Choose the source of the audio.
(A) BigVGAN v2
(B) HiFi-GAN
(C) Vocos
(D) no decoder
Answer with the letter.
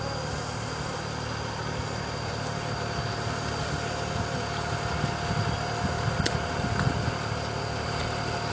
D